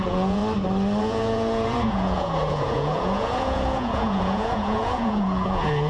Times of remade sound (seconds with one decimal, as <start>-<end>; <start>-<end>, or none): 0.0-0.4; 1.0-5.9